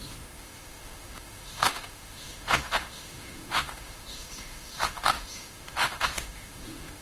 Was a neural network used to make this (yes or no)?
yes